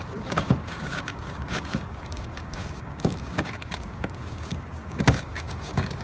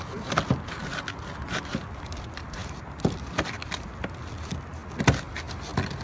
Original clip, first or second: second